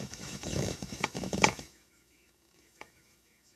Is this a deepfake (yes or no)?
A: yes